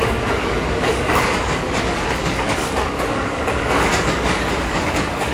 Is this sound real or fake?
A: fake